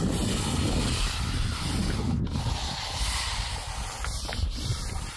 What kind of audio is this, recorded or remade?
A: recorded